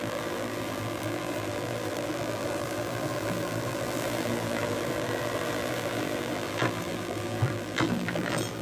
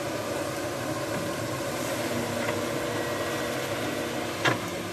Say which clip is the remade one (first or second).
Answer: first